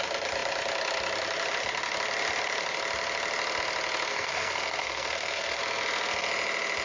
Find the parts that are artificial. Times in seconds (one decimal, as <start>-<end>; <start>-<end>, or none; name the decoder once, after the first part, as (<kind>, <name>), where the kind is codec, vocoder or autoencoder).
4.1-5.6 (codec, SNAC)

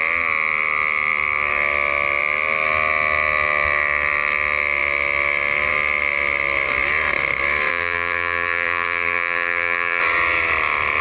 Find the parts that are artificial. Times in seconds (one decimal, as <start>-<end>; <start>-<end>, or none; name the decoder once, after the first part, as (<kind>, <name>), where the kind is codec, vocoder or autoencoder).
7.7-10.0 (vocoder, BigVGAN v2)